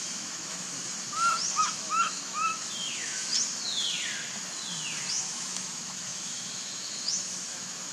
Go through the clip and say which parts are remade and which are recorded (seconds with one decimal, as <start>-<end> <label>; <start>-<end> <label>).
0.0-0.8 remade; 0.8-1.6 recorded; 1.6-3.3 remade; 3.3-5.1 recorded; 5.1-7.9 remade